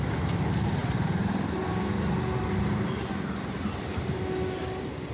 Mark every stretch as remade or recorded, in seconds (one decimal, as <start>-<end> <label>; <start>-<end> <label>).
0.0-5.1 recorded